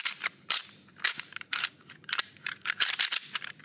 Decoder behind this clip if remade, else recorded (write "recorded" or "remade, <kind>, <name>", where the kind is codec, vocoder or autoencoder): remade, vocoder, BigVGAN v2